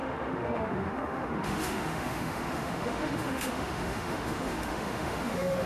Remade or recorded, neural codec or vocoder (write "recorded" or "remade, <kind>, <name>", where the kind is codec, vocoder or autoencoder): remade, autoencoder, DAC-VAE